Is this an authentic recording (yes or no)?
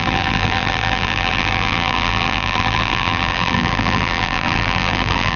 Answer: no